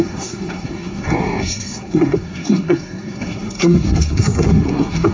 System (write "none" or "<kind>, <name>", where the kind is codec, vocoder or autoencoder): codec, SNAC